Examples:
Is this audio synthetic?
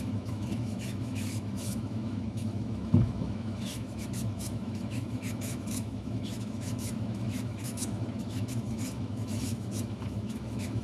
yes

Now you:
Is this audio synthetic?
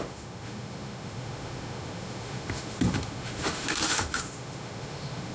yes